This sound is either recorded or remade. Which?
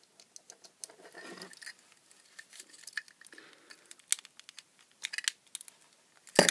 recorded